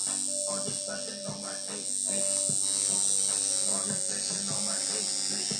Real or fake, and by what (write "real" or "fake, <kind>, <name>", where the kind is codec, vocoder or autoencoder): real